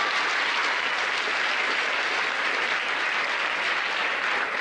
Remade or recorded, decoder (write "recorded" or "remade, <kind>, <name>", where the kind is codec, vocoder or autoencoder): recorded